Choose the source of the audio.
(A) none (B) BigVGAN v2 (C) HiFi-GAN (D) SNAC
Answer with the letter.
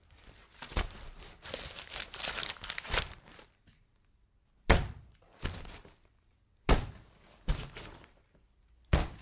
B